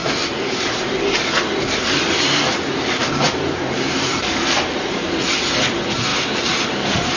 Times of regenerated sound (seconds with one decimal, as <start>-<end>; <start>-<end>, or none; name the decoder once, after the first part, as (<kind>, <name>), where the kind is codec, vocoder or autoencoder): 3.0-5.3 (vocoder, BigVGAN v2); 6.1-7.2